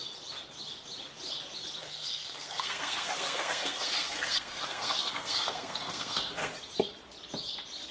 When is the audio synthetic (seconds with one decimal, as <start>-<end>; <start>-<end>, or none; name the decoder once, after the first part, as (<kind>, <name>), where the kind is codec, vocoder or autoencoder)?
1.8-6.5 (codec, SNAC)

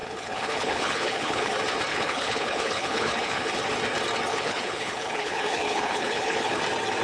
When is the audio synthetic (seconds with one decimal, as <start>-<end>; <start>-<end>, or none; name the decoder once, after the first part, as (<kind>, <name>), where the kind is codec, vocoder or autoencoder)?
0.0-1.5 (codec, HILCodec); 1.9-3.6; 4.3-6.6

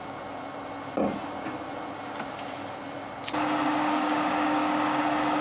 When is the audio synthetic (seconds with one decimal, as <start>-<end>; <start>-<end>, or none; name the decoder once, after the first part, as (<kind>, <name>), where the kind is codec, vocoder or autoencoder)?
3.8-5.0 (codec, DAC)

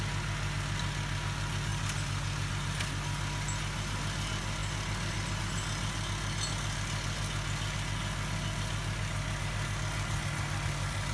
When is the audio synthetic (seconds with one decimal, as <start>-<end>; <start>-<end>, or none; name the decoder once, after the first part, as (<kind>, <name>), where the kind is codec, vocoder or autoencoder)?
none

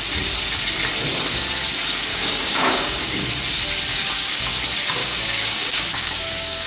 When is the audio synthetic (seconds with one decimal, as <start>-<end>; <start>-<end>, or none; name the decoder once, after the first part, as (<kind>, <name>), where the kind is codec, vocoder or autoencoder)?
2.1-3.3 (codec, DAC); 3.9-4.6; 5.0-6.7